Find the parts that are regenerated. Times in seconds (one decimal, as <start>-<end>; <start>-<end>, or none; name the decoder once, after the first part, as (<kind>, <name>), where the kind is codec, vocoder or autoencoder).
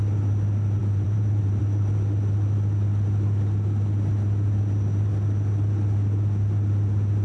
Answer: 0.8-1.6 (vocoder, BigVGAN v2)